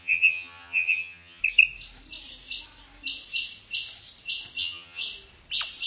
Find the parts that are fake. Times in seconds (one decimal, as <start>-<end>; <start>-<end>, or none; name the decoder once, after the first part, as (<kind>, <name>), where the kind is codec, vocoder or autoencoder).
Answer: 0.0-1.4 (vocoder, HiFi-GAN); 4.6-5.0